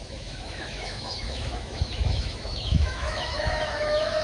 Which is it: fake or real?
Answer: fake